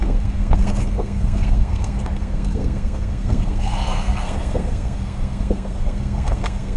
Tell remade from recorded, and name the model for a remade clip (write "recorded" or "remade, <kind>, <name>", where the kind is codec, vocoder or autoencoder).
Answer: remade, codec, SNAC